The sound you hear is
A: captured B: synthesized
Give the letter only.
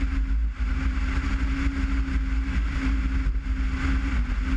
A